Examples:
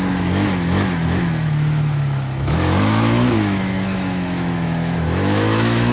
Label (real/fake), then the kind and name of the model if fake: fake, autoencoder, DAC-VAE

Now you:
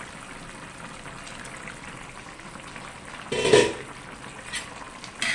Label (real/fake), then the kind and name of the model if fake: real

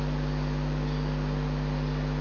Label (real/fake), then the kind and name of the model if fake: real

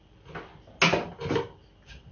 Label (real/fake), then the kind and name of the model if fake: real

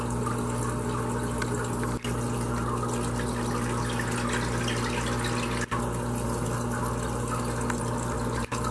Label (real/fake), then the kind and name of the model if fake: real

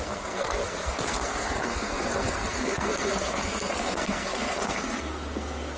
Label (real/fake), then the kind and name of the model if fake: fake, codec, SNAC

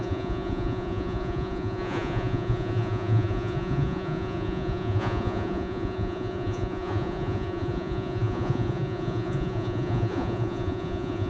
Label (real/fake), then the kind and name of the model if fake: fake, vocoder, Vocos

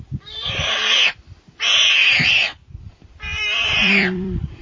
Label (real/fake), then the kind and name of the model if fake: fake, vocoder, BigVGAN v2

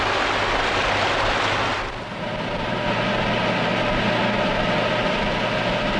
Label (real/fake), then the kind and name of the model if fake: real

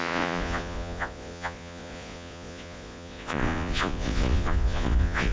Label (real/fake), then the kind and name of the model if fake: fake, vocoder, Vocos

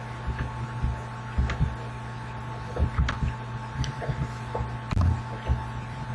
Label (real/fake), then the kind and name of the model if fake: real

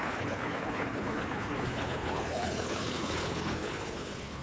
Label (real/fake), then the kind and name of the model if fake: fake, codec, HILCodec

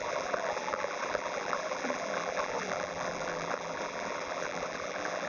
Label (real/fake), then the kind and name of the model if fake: fake, vocoder, BigVGAN v2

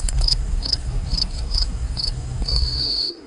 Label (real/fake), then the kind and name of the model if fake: fake, codec, SNAC